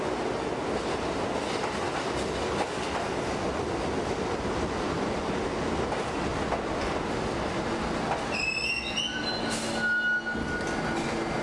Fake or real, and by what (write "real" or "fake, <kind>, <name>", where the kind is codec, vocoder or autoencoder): real